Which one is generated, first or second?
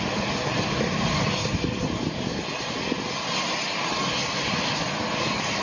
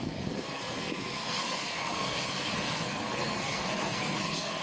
second